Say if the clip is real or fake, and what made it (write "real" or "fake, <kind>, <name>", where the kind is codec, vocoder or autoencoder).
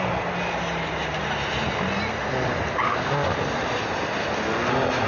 real